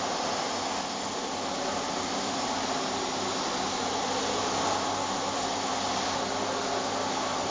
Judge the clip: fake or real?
real